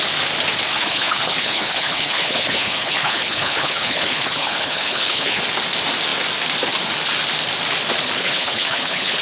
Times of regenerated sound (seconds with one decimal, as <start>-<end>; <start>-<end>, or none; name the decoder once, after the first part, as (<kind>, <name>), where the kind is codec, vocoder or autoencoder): 0.7-5.4 (codec, HILCodec); 8.2-9.2